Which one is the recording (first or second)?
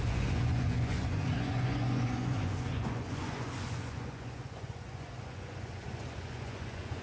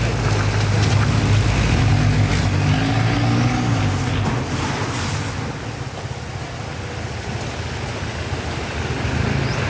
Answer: second